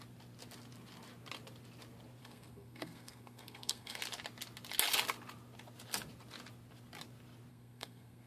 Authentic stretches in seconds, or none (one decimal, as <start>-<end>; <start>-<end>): 0.0-2.2; 4.0-7.5